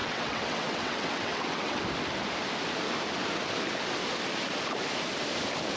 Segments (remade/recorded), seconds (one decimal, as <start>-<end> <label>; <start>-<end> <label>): 0.0-1.8 remade; 1.8-5.8 recorded